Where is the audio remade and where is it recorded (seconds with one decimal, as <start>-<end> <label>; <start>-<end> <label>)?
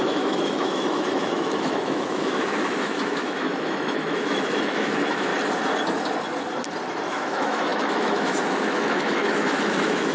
0.0-5.3 remade; 5.3-7.1 recorded; 7.1-10.1 remade